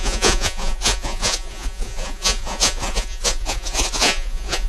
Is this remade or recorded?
remade